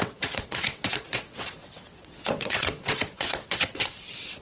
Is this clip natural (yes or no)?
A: no